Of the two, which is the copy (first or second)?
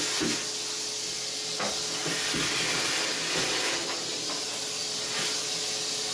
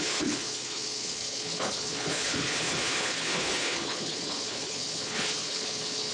second